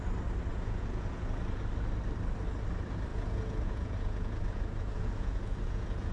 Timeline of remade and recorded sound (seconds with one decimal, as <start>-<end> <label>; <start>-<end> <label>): 0.0-0.5 recorded; 0.5-1.4 remade; 1.4-3.1 recorded; 3.1-6.1 remade